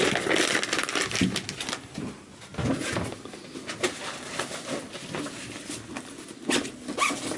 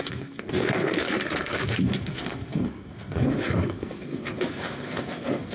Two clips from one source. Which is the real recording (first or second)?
first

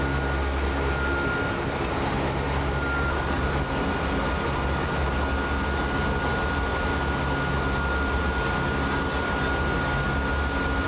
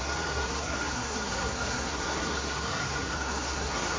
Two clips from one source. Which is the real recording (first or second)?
first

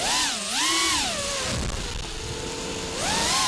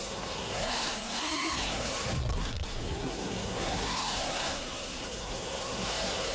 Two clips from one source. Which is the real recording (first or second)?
first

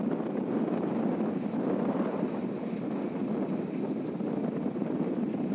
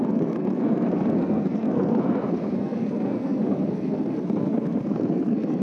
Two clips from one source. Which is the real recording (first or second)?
first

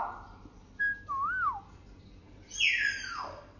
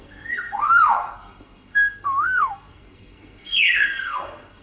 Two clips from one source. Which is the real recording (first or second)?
first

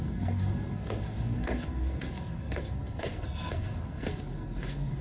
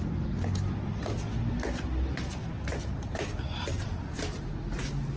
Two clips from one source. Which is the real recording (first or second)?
second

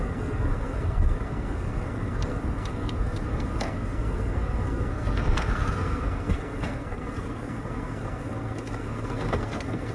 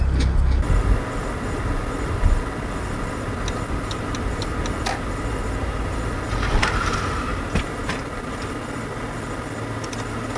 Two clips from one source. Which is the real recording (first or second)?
second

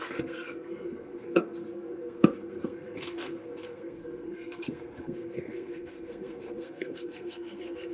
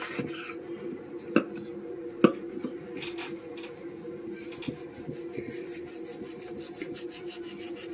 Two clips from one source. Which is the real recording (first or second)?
second